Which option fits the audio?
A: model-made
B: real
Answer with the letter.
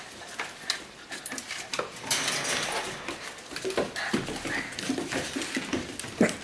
B